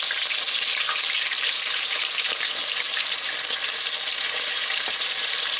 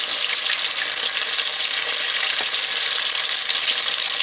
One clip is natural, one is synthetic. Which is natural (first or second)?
second